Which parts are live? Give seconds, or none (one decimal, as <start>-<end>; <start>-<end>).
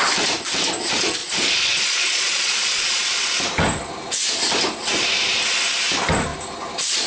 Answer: 0.0-1.2; 3.2-7.1